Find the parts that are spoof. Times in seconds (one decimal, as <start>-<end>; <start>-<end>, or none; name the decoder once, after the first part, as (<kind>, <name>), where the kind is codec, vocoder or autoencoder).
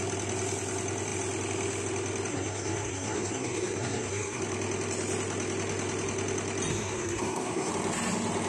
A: 2.3-4.4 (codec, SNAC); 6.7-7.7